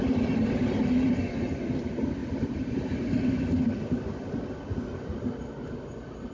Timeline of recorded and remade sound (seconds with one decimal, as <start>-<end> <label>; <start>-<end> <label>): 0.0-2.2 recorded; 2.2-5.3 remade; 5.3-6.3 recorded